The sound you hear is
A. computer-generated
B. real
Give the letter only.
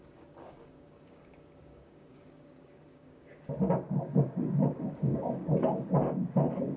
A